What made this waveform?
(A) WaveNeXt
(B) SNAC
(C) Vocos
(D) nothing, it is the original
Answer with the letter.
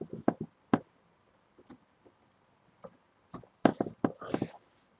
D